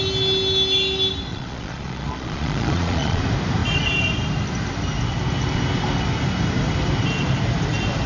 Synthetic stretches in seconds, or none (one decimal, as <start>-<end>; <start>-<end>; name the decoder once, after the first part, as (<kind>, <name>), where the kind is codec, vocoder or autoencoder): 1.3-3.2 (vocoder, Vocos)